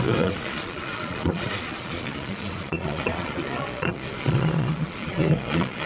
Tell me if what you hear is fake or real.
fake